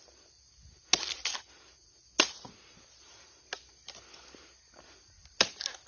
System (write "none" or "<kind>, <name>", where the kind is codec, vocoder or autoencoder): none